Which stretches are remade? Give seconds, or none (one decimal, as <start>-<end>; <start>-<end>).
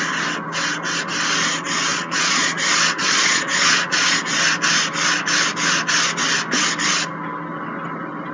1.9-2.6; 3.0-4.2